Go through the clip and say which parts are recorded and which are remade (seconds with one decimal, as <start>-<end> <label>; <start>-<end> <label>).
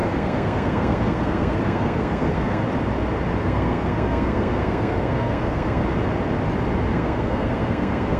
0.0-2.6 remade; 2.6-3.4 recorded; 3.4-5.8 remade; 5.8-6.9 recorded; 6.9-8.2 remade